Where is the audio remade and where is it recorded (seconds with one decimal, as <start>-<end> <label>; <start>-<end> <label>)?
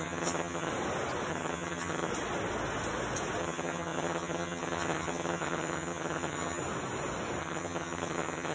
0.0-0.7 remade; 0.7-1.3 recorded; 1.3-2.1 remade; 2.1-3.4 recorded; 3.4-6.6 remade; 6.6-7.4 recorded; 7.4-8.5 remade